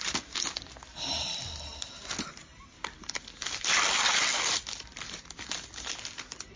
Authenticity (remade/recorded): recorded